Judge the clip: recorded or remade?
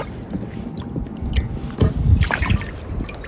recorded